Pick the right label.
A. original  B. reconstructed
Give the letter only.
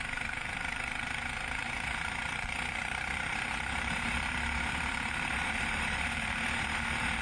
B